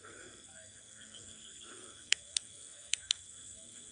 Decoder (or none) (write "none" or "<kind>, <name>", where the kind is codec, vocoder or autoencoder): codec, SNAC